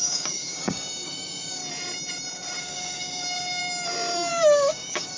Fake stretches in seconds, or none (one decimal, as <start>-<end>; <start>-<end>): 0.0-1.6; 2.6-3.6; 4.3-5.2